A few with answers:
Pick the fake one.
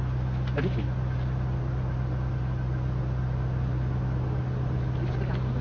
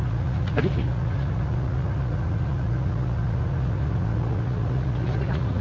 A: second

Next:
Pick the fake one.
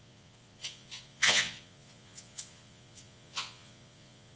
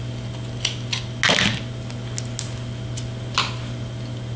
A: first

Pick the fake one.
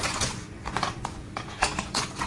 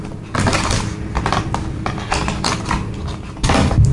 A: first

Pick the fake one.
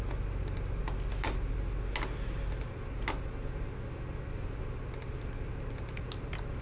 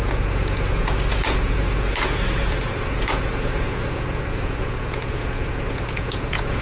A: second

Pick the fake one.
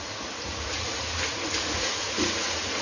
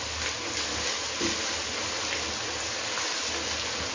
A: first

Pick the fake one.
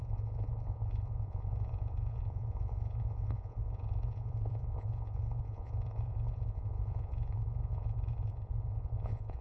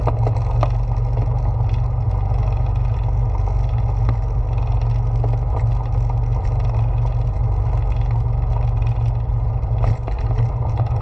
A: first